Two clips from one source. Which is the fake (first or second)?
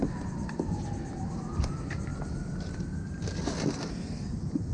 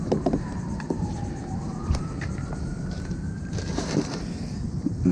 second